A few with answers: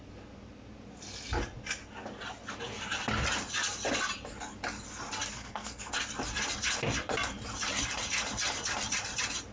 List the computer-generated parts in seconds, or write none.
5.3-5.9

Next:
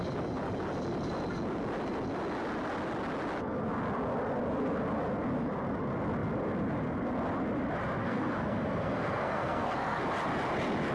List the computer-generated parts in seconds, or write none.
8.0-10.0

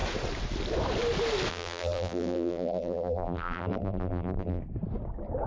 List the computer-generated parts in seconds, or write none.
1.5-4.6